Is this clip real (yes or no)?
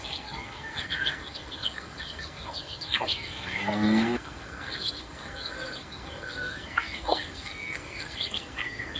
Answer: no